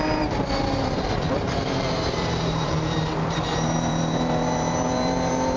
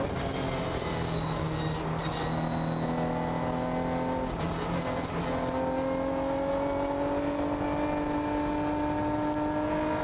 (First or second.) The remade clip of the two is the first